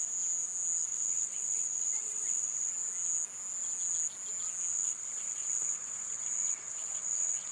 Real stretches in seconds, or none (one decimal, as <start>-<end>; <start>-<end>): 0.0-0.9; 2.7-4.7